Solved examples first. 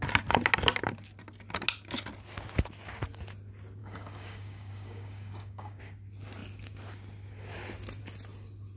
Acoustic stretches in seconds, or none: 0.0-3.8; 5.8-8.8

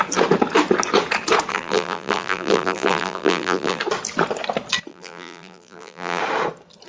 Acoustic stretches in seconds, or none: 0.0-1.5; 3.8-4.9; 6.2-6.9

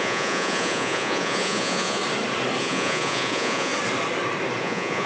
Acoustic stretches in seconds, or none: 2.0-2.6; 3.7-4.6

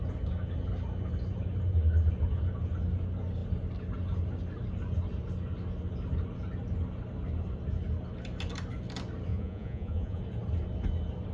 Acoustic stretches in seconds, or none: 0.0-9.3; 10.2-11.3

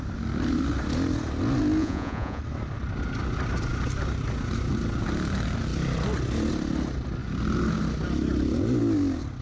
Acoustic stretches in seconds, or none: 0.0-1.8; 2.4-9.4

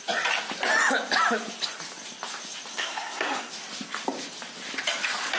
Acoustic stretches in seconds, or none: 0.0-2.7; 3.5-5.4

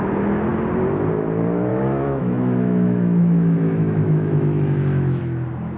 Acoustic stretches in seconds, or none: 0.0-1.7; 5.2-5.8